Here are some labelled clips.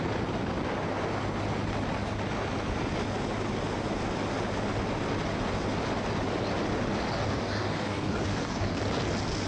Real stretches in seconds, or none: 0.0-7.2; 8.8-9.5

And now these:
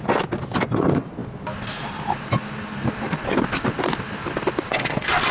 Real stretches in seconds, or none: 0.0-5.3